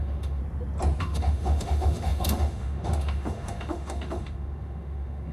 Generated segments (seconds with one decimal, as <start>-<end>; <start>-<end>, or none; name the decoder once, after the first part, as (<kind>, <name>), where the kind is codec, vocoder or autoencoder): 0.0-0.4 (autoencoder, DAC-VAE); 1.0-5.3